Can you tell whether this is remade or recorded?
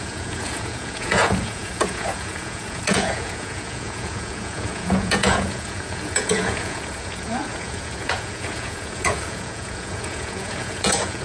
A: remade